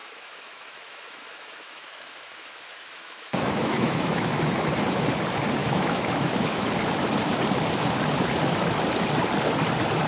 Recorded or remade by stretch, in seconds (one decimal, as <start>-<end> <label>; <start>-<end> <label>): 0.0-4.7 remade; 4.7-5.6 recorded; 5.6-6.7 remade; 6.7-10.1 recorded